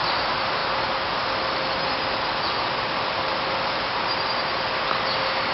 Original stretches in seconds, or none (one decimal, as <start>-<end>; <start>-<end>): 0.0-5.5